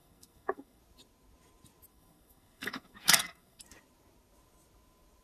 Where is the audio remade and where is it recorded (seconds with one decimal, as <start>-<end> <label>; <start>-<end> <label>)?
0.0-0.8 remade; 0.8-1.9 recorded; 1.9-3.6 remade; 3.6-5.2 recorded